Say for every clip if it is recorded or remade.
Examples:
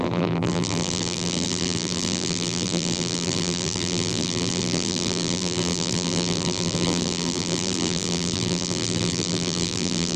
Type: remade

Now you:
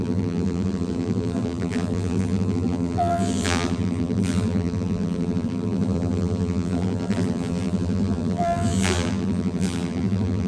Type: remade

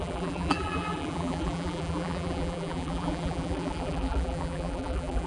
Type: remade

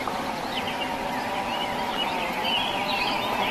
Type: remade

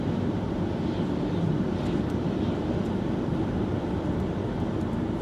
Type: remade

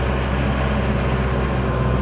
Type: recorded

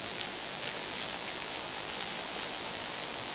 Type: remade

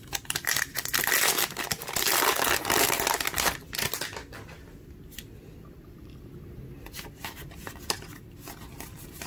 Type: recorded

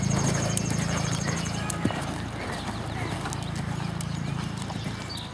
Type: recorded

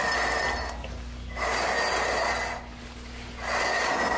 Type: recorded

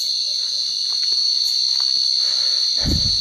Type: recorded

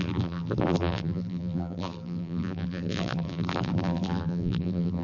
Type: remade